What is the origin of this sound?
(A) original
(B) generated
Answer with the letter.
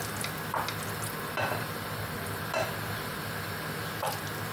A